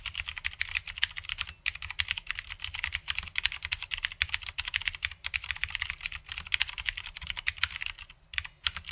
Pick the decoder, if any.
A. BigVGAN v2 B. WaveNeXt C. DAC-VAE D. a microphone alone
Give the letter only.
D